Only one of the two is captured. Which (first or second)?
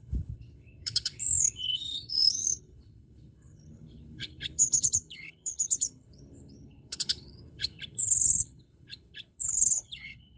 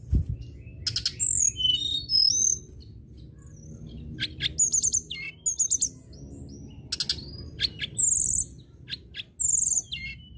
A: second